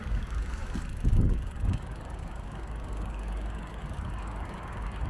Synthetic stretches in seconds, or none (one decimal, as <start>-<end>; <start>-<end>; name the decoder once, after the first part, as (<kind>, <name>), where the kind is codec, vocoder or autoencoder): 0.0-5.1 (codec, DAC)